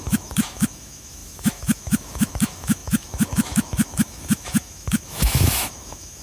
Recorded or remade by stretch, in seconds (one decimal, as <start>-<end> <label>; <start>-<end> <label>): 0.0-6.2 remade